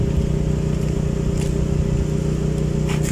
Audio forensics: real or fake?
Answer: real